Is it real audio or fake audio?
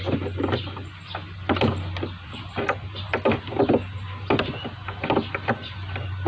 real